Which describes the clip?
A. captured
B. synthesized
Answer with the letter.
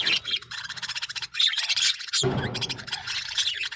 B